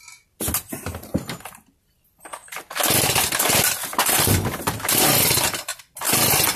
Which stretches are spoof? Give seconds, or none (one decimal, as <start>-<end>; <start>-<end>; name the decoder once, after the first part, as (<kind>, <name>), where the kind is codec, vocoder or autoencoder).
none